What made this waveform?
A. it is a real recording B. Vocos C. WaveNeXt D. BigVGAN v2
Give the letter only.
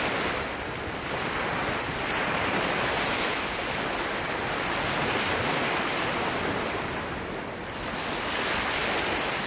A